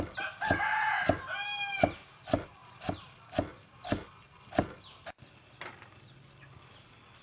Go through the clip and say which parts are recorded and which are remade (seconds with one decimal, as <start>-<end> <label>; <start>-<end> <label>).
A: 0.0-7.2 recorded